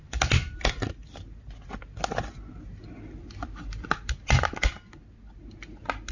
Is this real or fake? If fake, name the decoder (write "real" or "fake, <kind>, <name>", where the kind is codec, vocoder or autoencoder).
real